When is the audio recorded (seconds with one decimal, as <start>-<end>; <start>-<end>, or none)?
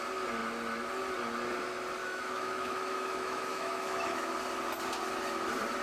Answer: 0.0-2.0; 4.3-5.8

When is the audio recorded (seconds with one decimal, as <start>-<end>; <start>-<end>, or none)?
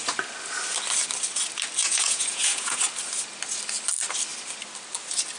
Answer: 0.0-1.8; 2.8-5.4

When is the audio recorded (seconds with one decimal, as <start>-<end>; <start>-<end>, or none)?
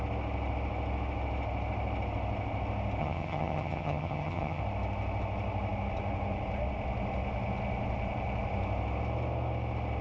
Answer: 0.0-3.0; 4.6-10.0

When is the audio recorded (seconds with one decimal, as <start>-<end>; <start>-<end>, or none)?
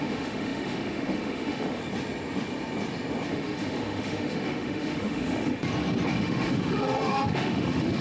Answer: 1.8-3.3; 5.6-6.2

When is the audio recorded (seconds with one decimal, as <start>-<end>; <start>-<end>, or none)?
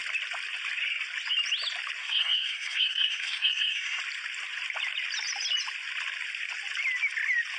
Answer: 0.0-2.0; 4.0-7.6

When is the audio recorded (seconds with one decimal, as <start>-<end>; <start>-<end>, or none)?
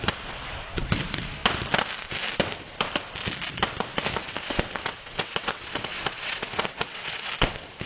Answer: 0.0-4.2; 7.3-7.9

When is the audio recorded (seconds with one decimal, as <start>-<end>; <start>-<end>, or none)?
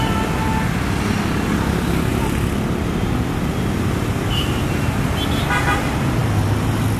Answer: 0.0-7.0